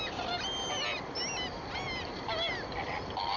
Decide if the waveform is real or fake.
real